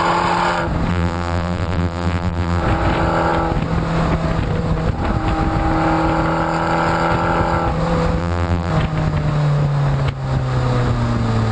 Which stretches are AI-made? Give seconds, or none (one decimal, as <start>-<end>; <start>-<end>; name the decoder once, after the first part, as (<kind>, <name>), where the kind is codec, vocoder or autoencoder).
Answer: 0.9-2.6 (vocoder, BigVGAN v2); 8.2-8.7